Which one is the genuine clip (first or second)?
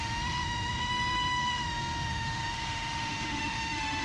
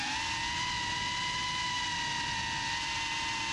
second